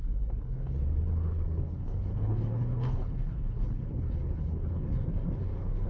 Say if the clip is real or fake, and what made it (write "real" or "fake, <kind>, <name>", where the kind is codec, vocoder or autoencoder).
fake, codec, HILCodec